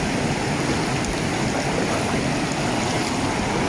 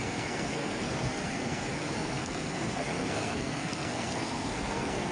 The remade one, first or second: second